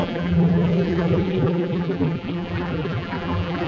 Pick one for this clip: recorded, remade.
remade